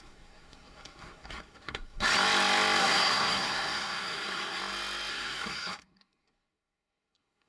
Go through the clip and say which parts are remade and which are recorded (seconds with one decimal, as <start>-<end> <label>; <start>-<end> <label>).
0.0-2.1 remade; 2.1-2.8 recorded; 2.8-4.6 remade; 4.6-5.1 recorded; 5.1-7.5 remade